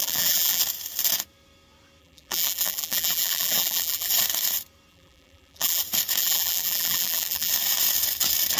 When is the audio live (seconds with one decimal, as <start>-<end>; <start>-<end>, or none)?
0.6-2.0; 4.1-4.9; 5.8-6.2; 7.5-8.6